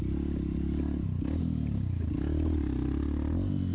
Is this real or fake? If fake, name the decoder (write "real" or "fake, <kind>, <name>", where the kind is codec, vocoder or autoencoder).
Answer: real